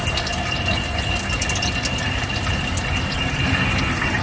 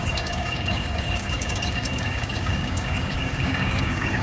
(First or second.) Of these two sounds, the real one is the first